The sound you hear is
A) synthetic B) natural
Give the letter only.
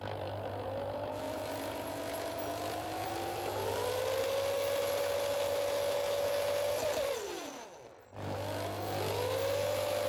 B